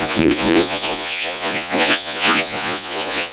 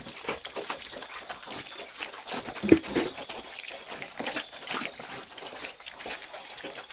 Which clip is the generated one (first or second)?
first